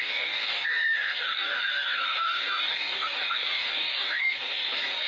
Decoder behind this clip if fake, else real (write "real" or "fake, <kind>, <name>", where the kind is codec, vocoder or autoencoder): fake, codec, DAC